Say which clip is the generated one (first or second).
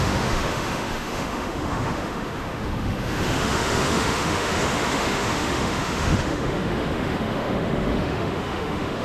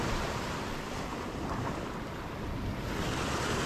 first